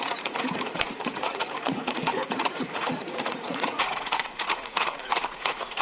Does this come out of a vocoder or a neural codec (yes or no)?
yes